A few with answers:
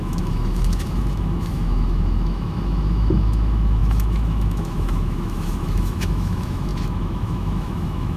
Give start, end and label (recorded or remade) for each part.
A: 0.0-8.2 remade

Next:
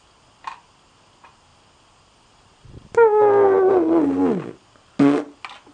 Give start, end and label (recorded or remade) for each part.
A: 0.0-5.7 recorded

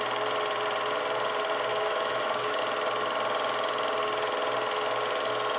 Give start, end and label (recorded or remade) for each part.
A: 0.0-1.7 recorded; 1.7-2.6 remade; 2.6-5.6 recorded